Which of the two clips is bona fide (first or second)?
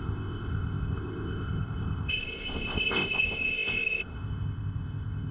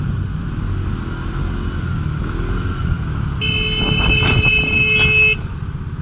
second